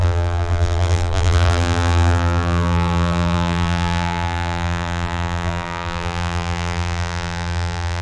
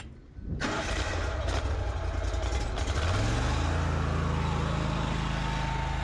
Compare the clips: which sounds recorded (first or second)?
second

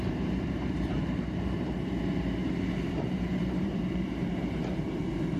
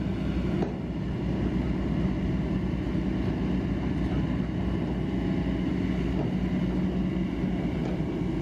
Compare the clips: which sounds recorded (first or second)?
second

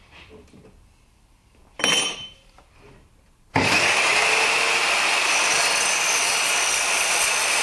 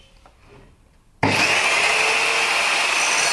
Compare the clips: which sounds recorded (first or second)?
second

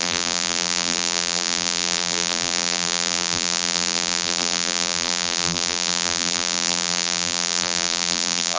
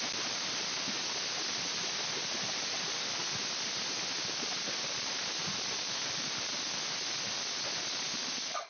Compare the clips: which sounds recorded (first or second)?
second